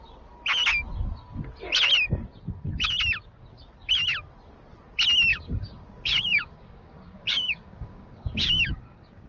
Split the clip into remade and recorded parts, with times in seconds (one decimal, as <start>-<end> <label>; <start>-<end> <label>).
0.0-5.3 recorded; 5.3-9.3 remade